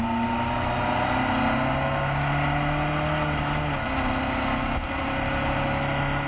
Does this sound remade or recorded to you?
recorded